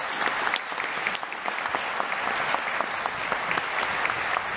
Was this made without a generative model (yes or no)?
yes